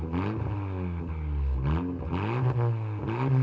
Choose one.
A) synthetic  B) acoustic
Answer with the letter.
B